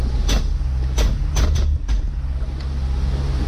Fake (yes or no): no